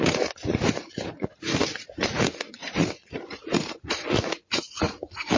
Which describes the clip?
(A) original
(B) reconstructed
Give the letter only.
B